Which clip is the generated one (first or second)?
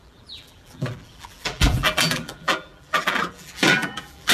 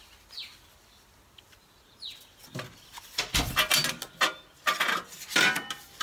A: first